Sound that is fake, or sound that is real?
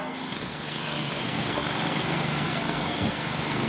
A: fake